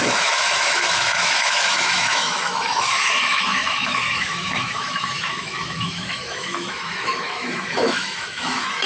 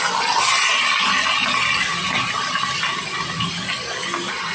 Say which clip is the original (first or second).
second